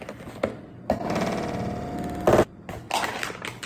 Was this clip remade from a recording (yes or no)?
no